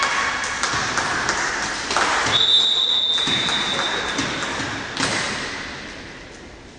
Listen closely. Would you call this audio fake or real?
real